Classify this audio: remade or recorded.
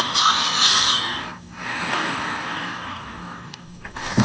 remade